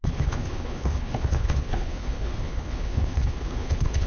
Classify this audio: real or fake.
fake